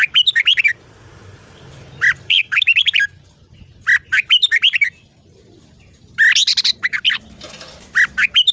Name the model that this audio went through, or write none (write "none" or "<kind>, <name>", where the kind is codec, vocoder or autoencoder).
none